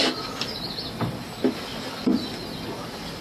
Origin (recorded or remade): recorded